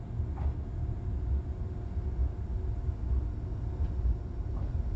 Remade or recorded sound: recorded